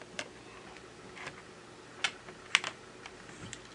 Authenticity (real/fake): real